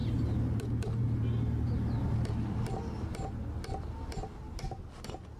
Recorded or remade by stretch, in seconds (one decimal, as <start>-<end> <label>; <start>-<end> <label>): 0.0-5.4 recorded